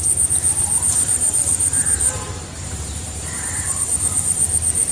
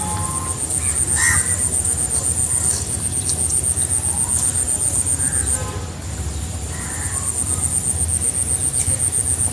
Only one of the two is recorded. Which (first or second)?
second